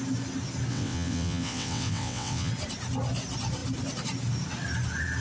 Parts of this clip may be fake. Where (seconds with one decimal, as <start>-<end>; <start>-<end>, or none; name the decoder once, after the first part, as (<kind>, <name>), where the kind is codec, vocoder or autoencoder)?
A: 0.7-2.5 (vocoder, WaveNeXt)